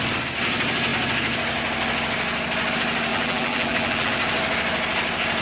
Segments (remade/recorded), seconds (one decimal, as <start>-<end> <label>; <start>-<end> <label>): 0.0-3.1 recorded; 3.1-4.1 remade; 4.1-5.4 recorded

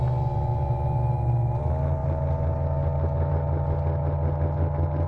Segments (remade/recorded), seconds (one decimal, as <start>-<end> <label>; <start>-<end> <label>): 0.0-5.1 recorded

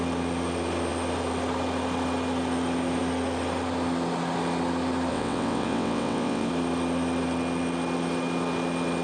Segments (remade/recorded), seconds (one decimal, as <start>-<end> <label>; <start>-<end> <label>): 0.0-5.1 recorded; 5.1-6.5 remade; 6.5-9.0 recorded

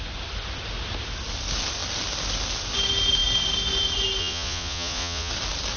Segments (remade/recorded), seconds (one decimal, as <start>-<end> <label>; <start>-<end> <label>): 0.0-4.2 recorded; 4.2-5.3 remade; 5.3-5.8 recorded

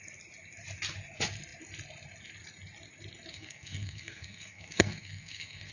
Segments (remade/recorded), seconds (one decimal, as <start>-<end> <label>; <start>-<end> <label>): 0.0-3.3 recorded; 3.3-5.7 remade

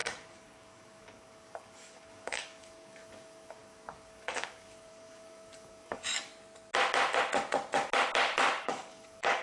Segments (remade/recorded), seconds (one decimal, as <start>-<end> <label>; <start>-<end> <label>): 0.0-6.3 remade; 6.3-8.6 recorded; 8.6-9.4 remade

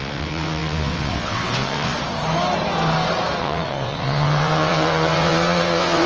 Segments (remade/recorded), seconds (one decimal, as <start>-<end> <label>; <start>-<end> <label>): 0.0-1.9 remade; 1.9-3.4 recorded; 3.4-6.1 remade